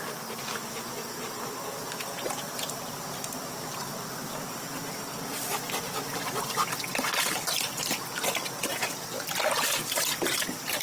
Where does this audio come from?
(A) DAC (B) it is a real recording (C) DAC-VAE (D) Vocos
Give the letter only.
B